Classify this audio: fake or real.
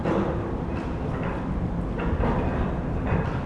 real